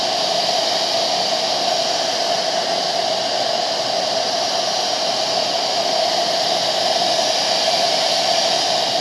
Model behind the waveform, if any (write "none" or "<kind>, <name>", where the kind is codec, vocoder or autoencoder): none